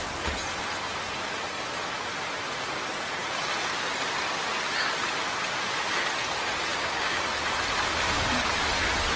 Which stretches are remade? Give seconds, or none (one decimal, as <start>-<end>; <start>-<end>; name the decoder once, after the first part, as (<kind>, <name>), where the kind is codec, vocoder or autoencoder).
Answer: 6.7-7.2 (codec, DAC)